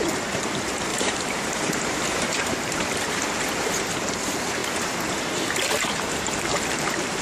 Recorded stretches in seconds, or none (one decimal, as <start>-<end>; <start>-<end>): 0.0-0.9; 2.9-7.2